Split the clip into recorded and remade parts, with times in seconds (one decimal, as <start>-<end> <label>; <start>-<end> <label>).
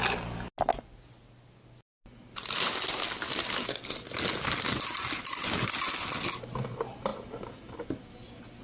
0.0-8.6 recorded